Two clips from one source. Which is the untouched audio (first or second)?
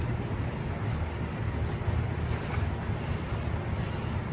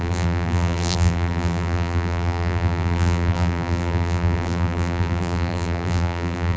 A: first